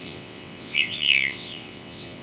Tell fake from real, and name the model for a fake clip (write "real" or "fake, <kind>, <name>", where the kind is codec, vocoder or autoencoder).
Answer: fake, vocoder, WaveNeXt